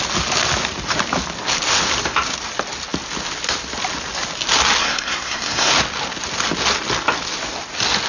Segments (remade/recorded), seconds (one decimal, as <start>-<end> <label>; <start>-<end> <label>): 0.0-4.8 recorded; 4.8-5.7 remade; 5.7-8.1 recorded